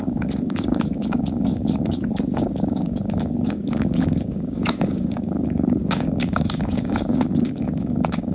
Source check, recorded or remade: remade